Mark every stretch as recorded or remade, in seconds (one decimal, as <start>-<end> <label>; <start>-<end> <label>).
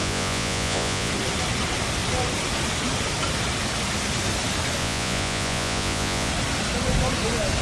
0.0-1.1 remade; 1.1-4.8 recorded; 4.8-6.3 remade; 6.3-7.6 recorded